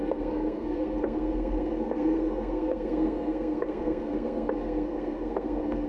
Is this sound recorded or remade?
remade